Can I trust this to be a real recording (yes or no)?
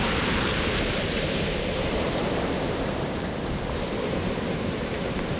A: no